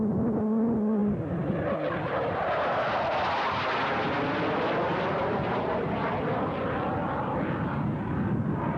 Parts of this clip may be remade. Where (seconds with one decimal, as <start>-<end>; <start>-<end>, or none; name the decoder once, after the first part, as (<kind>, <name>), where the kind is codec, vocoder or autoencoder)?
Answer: 4.9-6.2 (vocoder, BigVGAN v2)